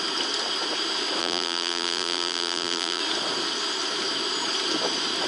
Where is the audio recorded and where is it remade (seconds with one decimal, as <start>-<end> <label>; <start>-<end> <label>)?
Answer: 0.0-1.2 recorded; 1.2-3.0 remade; 3.0-5.3 recorded